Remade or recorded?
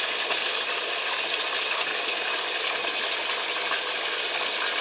recorded